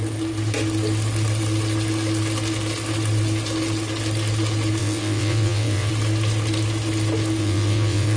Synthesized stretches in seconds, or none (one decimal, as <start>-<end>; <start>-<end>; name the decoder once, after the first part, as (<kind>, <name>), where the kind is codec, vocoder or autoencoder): 4.8-5.9 (vocoder, WaveNeXt); 7.4-8.2